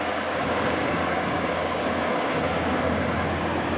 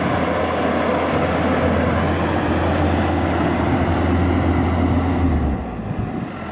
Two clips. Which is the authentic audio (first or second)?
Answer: second